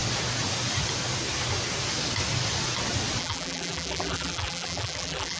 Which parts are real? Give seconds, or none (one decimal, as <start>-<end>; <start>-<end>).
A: 0.0-3.2